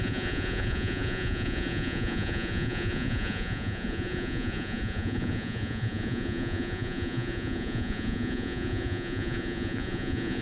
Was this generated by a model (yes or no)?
yes